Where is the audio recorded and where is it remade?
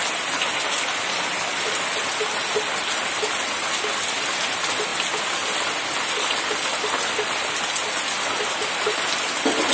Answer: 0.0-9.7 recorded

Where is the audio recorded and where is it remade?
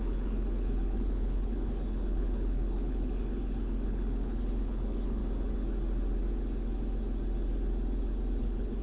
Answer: 0.0-5.2 remade; 5.2-8.4 recorded; 8.4-8.8 remade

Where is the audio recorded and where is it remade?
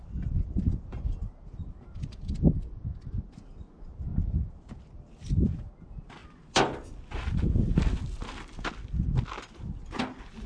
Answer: 0.0-10.5 recorded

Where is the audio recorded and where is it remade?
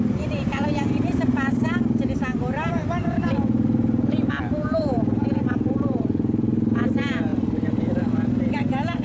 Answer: 0.0-1.3 remade; 1.3-2.4 recorded; 2.4-9.0 remade